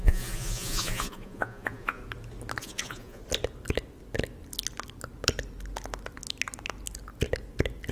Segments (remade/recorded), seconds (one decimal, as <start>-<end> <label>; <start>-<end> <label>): 0.0-2.0 remade; 2.0-2.6 recorded; 2.6-3.2 remade; 3.2-7.9 recorded